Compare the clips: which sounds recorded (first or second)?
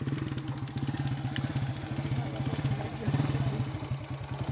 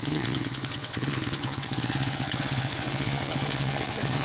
first